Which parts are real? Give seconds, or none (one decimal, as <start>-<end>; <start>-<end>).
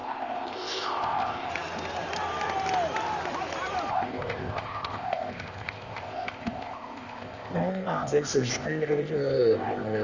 1.5-3.9